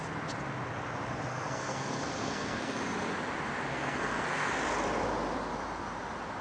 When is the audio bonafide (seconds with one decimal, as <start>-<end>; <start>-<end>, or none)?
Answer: 0.0-1.3; 2.8-3.7; 4.5-6.4